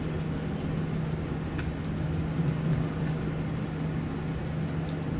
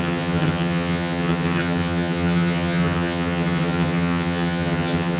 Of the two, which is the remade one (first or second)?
second